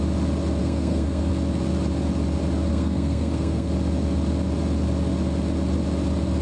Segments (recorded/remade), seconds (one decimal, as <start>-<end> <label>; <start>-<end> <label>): 0.0-0.6 recorded; 0.6-1.3 remade; 1.3-2.7 recorded; 2.7-3.7 remade; 3.7-6.4 recorded

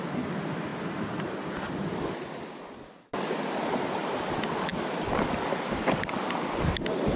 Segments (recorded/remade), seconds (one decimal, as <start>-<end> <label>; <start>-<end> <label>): 0.0-7.2 recorded

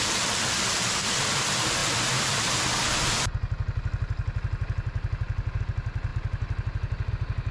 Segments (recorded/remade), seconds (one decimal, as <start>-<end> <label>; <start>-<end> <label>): 0.0-7.5 recorded